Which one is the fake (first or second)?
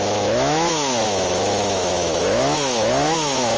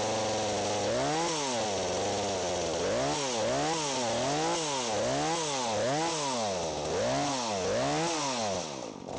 first